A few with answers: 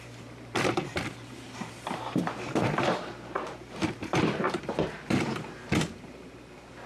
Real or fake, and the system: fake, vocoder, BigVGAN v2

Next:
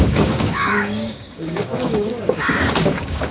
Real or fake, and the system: fake, codec, DAC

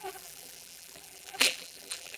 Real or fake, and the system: fake, vocoder, BigVGAN v2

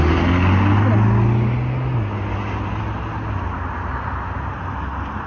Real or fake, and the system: real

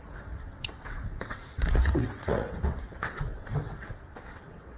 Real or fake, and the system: fake, vocoder, WaveNeXt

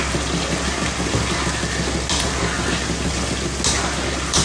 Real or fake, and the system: real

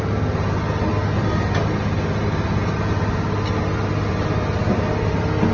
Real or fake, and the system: real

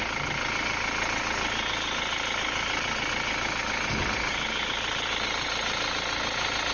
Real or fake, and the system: real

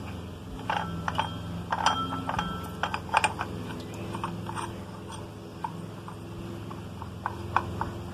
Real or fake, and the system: real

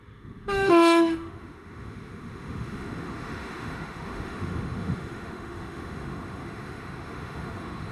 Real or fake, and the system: fake, autoencoder, DAC-VAE